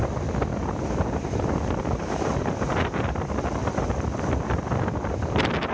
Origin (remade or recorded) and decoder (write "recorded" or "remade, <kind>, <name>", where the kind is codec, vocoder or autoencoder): recorded